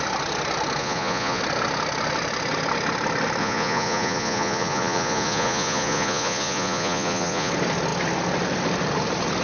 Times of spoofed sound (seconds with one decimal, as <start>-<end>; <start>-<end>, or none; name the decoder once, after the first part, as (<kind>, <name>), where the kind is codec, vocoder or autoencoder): 0.8-1.4 (vocoder, Vocos); 3.4-7.5

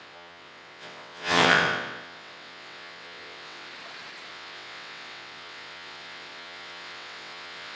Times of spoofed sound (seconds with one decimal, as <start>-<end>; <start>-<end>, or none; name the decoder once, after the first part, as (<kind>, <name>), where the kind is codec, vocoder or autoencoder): 0.0-3.7 (vocoder, WaveNeXt); 4.3-7.8

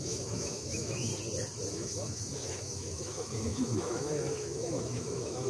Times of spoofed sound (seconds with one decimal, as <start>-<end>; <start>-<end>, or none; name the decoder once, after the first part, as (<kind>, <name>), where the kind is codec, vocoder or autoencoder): 0.0-1.1 (autoencoder, DAC-VAE); 1.7-5.5

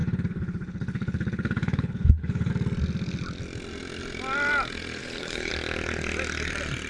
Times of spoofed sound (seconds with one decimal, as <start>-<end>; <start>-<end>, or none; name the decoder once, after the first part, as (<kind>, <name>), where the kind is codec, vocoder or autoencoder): 0.0-2.5 (codec, HILCodec); 5.0-5.5

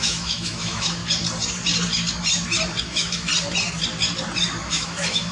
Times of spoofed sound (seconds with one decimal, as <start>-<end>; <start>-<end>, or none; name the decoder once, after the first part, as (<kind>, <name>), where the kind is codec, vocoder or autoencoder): 0.0-1.0 (autoencoder, DAC-VAE); 2.8-3.3; 4.7-5.3

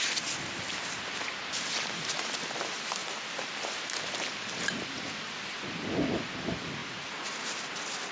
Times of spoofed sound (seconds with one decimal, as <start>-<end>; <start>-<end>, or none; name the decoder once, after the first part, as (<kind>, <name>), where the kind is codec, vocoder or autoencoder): 6.8-7.3 (vocoder, Vocos)

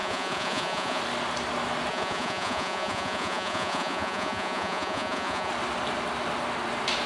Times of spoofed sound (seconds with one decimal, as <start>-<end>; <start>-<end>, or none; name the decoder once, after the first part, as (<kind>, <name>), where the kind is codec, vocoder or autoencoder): 0.0-1.0 (vocoder, Vocos); 1.9-5.5